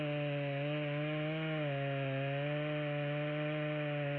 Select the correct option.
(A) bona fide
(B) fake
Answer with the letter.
A